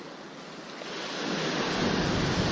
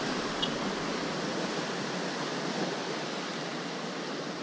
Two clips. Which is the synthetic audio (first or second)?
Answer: second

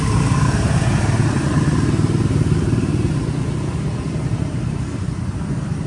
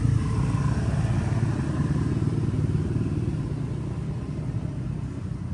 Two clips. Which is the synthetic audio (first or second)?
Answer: first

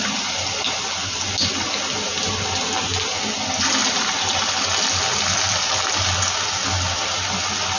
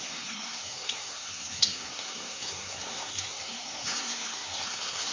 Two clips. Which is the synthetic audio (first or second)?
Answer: second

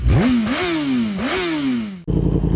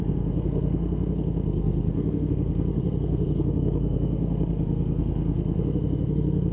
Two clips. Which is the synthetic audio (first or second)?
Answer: second